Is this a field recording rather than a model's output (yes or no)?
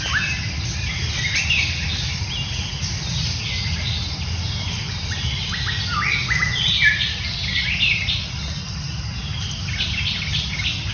yes